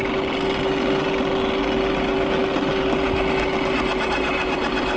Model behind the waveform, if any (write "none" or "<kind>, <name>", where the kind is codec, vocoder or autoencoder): none